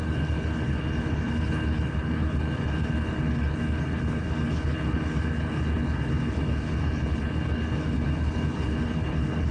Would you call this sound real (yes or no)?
no